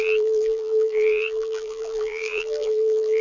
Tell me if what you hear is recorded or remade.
remade